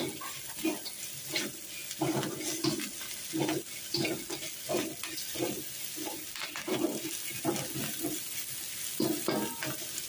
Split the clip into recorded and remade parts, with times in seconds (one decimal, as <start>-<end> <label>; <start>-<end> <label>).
0.0-10.1 recorded